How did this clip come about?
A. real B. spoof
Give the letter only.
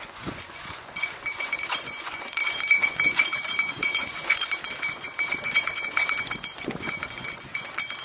B